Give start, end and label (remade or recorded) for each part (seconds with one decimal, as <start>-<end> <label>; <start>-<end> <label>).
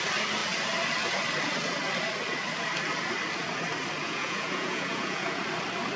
0.0-4.0 recorded; 4.0-5.4 remade; 5.4-6.0 recorded